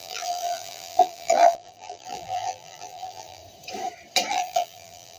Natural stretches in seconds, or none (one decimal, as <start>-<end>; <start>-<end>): 3.4-4.3